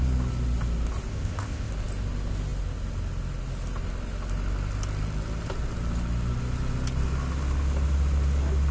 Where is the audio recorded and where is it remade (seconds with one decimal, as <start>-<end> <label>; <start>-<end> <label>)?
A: 0.0-1.1 recorded; 1.1-1.7 remade; 1.7-8.7 recorded

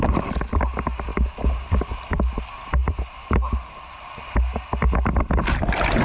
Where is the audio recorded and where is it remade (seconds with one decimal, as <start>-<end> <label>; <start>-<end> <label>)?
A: 0.0-6.0 recorded

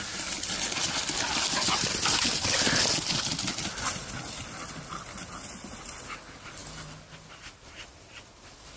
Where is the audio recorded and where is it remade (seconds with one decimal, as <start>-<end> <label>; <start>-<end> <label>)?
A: 0.0-8.8 recorded

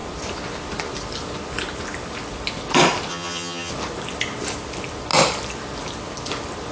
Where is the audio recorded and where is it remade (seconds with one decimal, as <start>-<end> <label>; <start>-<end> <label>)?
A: 0.0-3.1 recorded; 3.1-3.7 remade; 3.7-6.7 recorded